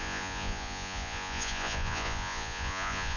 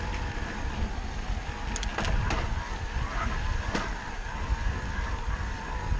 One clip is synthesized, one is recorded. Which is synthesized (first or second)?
first